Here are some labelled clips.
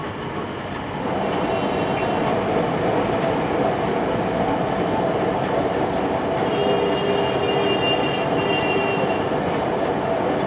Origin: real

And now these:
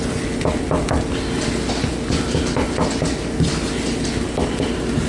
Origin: real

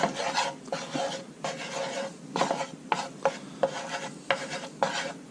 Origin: real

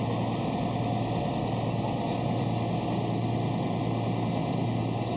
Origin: real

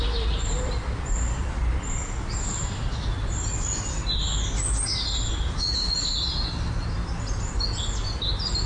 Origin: real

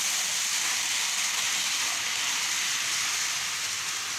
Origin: real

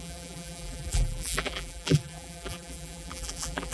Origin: fake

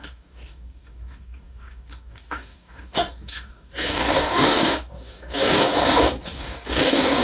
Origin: fake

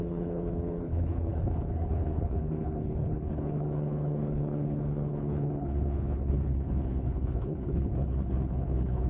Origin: fake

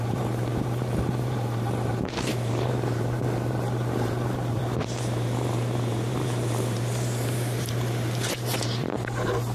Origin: fake